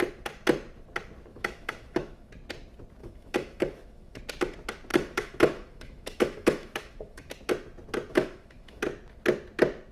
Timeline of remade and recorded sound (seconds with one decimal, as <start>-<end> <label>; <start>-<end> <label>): 0.0-1.3 recorded; 1.3-2.3 remade; 2.3-3.0 recorded; 3.0-4.2 remade; 4.2-4.9 recorded; 4.9-7.3 remade; 7.3-8.1 recorded; 8.1-8.8 remade; 8.8-9.9 recorded